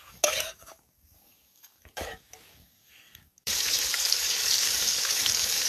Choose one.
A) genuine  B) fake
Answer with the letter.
B